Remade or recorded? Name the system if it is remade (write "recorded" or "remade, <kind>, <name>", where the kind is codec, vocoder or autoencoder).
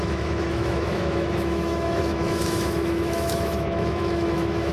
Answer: remade, autoencoder, DAC-VAE